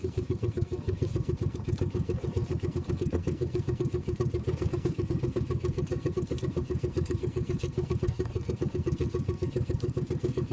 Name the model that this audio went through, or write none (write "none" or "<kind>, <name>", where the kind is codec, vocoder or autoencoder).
codec, SNAC